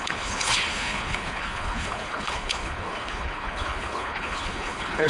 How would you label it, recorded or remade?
remade